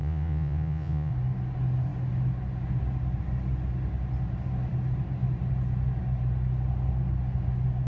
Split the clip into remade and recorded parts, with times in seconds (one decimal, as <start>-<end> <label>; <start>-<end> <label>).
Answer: 0.0-1.1 remade; 1.1-7.9 recorded